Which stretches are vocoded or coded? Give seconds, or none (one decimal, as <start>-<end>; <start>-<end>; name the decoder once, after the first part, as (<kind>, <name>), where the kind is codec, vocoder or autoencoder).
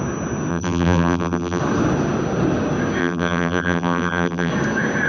0.5-1.6 (vocoder, BigVGAN v2); 3.0-4.5